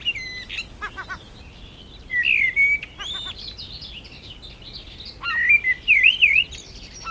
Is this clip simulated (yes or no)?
no